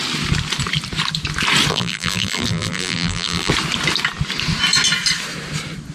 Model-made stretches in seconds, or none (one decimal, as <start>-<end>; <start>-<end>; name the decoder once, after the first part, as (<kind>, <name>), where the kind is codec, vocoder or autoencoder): 1.7-3.5 (vocoder, BigVGAN v2)

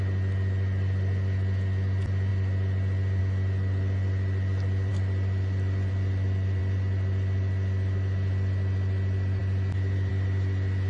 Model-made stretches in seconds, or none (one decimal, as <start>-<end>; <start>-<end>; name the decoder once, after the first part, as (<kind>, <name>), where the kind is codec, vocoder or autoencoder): 4.9-6.6 (vocoder, BigVGAN v2)

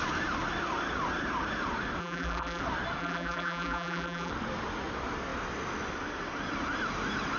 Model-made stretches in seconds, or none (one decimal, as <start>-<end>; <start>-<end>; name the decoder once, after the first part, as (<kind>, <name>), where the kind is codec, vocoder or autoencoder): 2.0-2.6 (vocoder, BigVGAN v2); 3.0-4.3

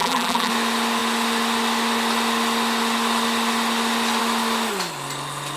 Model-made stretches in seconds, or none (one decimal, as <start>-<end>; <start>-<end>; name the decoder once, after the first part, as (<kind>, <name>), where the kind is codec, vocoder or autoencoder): 0.0-0.5 (vocoder, BigVGAN v2)

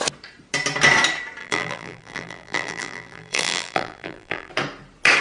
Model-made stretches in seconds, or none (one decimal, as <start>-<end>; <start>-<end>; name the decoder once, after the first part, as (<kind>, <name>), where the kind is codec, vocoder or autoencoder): 1.4-4.5 (vocoder, BigVGAN v2)